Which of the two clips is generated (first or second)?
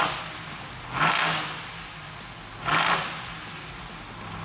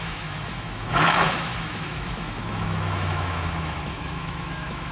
second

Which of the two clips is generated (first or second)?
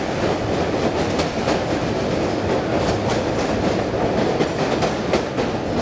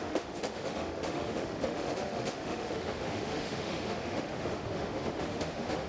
second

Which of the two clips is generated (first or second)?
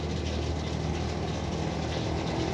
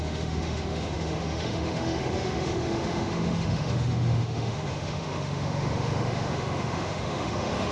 second